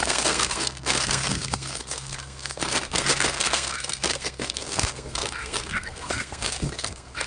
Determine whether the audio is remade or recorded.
remade